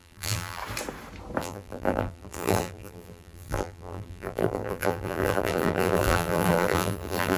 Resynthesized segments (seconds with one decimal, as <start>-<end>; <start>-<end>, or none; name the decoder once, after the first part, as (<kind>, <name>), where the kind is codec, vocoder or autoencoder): 0.0-0.6 (vocoder, BigVGAN v2); 1.4-7.4